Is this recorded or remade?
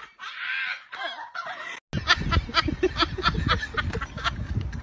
recorded